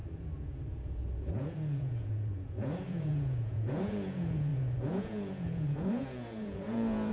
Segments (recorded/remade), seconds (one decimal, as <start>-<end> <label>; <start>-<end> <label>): 0.0-7.1 remade